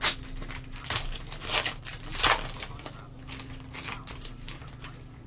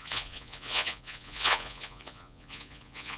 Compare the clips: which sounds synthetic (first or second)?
second